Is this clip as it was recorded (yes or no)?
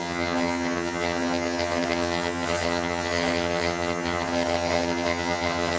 no